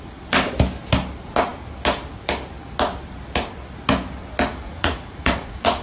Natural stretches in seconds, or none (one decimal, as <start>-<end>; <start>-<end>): 0.0-4.5

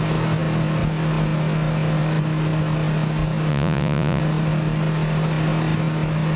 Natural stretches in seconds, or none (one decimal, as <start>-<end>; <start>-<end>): 0.0-3.5; 4.2-6.4

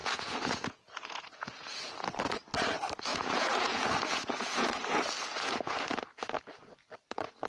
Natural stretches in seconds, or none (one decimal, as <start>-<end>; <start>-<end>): 1.9-3.1; 4.8-7.5

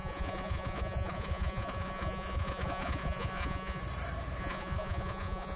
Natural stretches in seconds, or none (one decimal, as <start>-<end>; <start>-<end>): 3.8-4.4

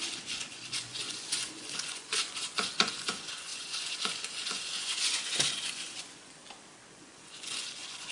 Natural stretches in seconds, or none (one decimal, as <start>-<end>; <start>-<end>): 6.4-6.9

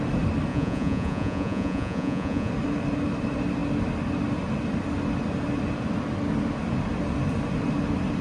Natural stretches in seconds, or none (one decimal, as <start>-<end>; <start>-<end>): 0.0-0.5; 2.5-8.2